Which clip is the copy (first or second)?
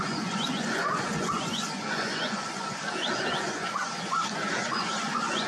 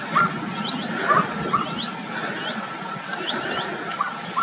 first